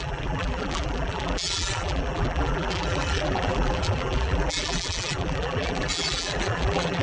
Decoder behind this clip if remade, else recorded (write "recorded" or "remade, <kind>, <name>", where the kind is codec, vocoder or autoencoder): remade, vocoder, BigVGAN v2